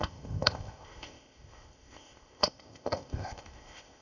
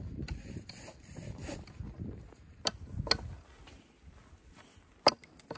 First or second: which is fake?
first